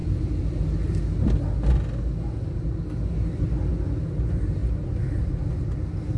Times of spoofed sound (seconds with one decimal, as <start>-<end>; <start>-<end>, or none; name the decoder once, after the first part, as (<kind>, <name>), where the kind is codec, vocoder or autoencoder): none